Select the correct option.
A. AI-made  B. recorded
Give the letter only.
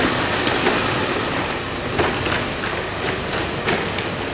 B